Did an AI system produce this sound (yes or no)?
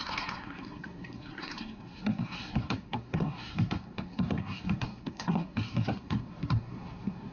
yes